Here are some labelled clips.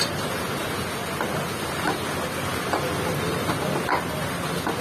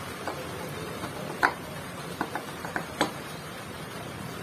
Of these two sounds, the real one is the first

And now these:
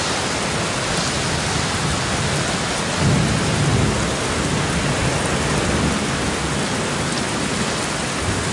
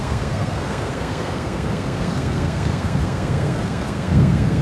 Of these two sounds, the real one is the first